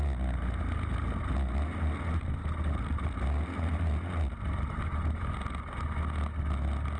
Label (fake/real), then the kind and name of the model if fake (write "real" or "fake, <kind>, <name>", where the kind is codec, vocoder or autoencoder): real